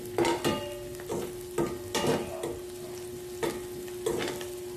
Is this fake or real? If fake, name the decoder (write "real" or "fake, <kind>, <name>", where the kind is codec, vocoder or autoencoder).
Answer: real